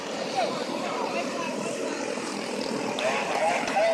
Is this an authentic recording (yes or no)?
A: no